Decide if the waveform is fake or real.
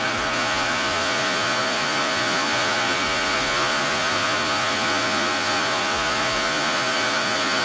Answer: fake